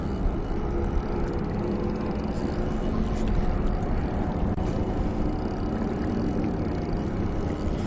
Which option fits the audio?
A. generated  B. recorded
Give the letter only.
A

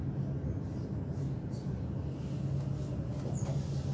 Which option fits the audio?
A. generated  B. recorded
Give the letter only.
B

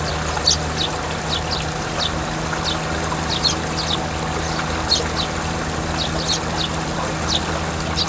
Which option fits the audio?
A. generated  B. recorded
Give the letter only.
B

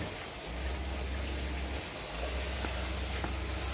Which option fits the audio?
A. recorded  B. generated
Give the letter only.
A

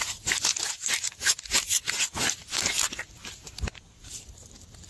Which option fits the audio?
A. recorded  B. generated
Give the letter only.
A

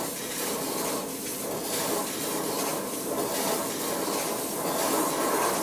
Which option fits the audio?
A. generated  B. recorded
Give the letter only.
B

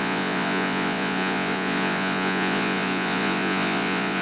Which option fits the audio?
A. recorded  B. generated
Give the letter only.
B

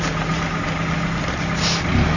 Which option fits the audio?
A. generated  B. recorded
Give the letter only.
B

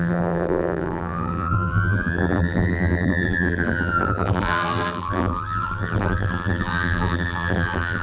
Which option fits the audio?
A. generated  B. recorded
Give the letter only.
A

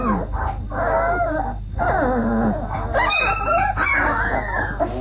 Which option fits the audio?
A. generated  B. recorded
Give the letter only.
B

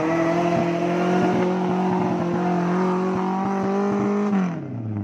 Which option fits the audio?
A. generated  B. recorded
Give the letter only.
B